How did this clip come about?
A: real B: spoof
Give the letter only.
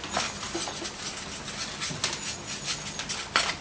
A